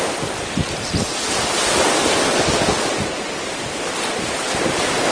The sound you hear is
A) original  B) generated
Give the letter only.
A